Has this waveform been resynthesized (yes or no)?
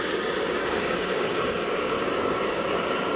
yes